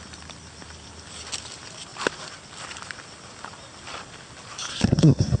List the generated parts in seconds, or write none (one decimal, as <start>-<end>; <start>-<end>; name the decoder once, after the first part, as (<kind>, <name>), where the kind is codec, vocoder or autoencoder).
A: 4.7-5.4 (codec, SNAC)